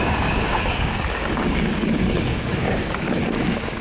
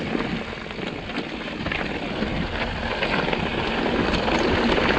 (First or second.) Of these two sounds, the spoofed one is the first